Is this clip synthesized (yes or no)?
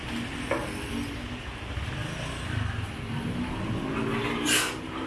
no